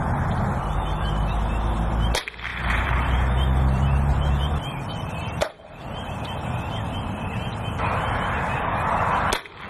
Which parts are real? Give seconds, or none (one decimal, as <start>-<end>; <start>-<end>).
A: 0.0-2.5; 6.7-9.7